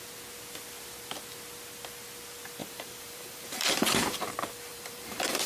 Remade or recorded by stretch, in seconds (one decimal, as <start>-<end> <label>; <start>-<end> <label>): 0.0-2.6 recorded; 2.6-4.3 remade; 4.3-4.7 recorded; 4.7-5.5 remade